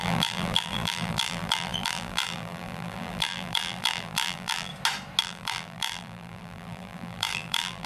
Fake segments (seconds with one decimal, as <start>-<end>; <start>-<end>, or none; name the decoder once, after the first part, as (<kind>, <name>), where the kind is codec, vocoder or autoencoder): 0.0-4.7 (vocoder, BigVGAN v2); 5.2-7.9